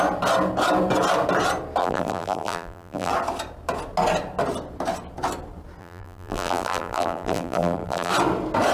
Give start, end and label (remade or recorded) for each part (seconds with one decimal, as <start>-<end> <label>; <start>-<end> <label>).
0.0-1.8 recorded; 1.8-3.1 remade; 3.1-5.8 recorded; 5.8-8.1 remade; 8.1-8.7 recorded